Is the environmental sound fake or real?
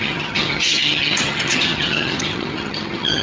fake